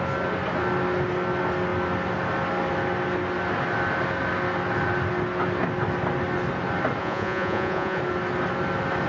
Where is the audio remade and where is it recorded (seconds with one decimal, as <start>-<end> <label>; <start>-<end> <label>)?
0.0-7.0 recorded; 7.0-8.0 remade; 8.0-9.1 recorded